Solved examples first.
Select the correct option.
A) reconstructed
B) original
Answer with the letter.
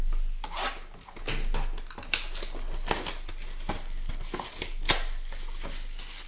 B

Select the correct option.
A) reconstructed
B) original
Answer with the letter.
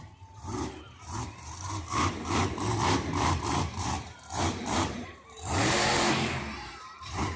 A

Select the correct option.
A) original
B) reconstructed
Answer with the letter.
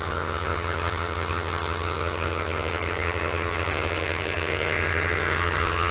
B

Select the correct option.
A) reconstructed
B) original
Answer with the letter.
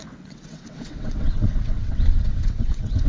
A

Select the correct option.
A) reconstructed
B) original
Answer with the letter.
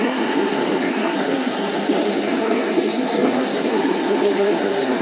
A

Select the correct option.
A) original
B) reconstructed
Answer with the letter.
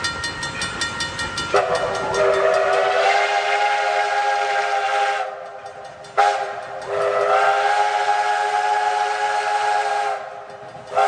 A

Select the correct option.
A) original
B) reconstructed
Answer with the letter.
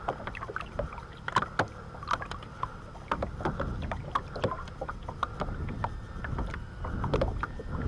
A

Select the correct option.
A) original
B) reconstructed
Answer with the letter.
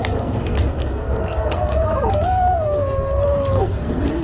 B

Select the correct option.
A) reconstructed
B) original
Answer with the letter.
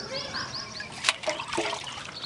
A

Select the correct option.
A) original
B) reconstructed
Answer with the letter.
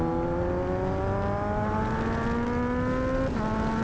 A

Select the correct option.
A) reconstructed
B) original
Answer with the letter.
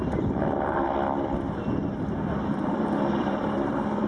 A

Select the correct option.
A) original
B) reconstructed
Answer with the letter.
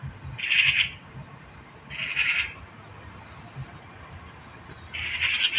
A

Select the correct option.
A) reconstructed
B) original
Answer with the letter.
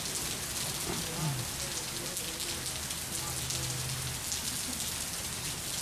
B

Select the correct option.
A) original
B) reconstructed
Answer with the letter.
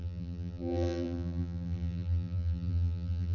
B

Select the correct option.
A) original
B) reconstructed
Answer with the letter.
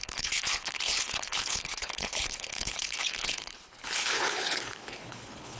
B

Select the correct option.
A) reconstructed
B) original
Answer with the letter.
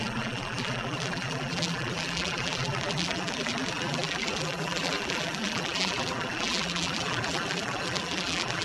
A